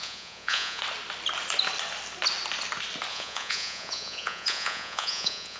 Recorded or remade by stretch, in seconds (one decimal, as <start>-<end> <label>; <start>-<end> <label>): 0.0-0.8 remade; 0.8-3.1 recorded; 3.1-5.6 remade